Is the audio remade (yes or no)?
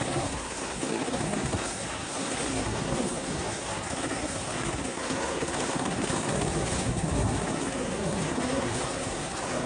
yes